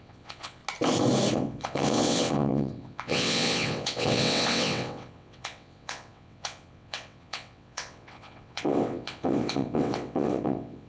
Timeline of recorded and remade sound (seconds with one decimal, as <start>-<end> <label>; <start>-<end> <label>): 0.0-0.6 remade; 0.6-1.3 recorded; 1.3-10.9 remade